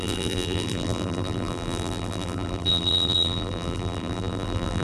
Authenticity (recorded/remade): remade